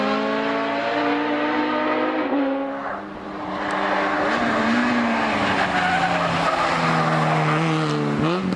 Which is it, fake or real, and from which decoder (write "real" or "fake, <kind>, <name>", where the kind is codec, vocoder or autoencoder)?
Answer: real